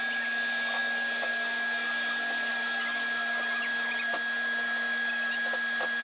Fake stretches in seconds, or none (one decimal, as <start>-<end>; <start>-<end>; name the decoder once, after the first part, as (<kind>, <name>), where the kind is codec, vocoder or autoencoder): none